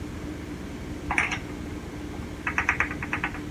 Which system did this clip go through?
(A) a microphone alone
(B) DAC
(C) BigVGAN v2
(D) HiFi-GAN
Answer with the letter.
A